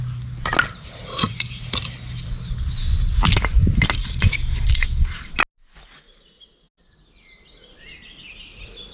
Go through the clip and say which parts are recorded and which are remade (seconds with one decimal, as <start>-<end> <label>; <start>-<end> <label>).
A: 0.0-4.0 recorded; 4.0-5.2 remade; 5.2-8.9 recorded